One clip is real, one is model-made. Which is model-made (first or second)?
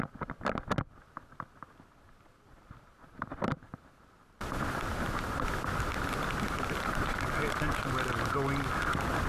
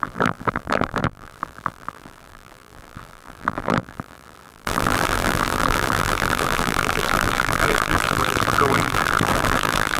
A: second